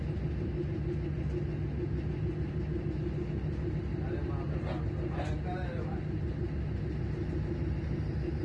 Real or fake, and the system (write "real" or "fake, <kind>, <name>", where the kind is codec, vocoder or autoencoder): real